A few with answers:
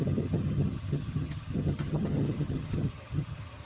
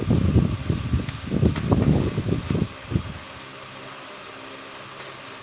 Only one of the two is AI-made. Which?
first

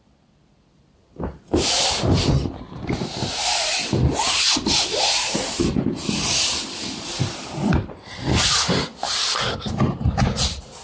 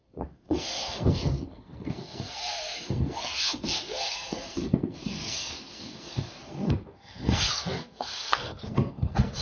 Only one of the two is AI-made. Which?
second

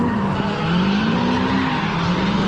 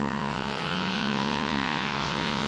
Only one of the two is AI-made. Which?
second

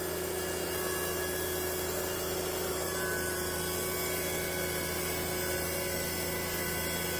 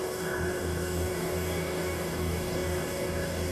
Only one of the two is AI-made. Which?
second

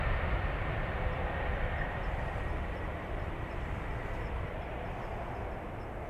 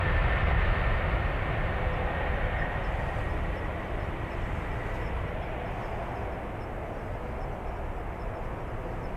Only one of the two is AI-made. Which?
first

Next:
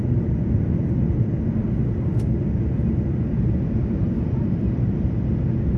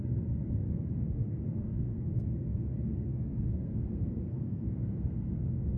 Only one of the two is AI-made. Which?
second